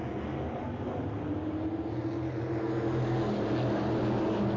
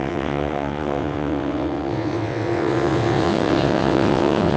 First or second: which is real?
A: first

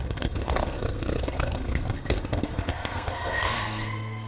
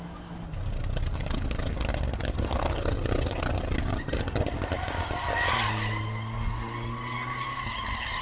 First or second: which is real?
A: second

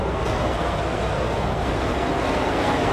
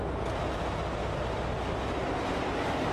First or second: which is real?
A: second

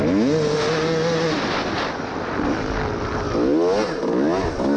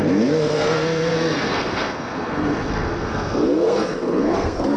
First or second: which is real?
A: first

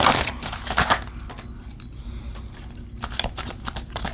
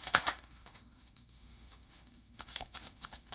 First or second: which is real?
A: first